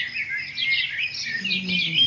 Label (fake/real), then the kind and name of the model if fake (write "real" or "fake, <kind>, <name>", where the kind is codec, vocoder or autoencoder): real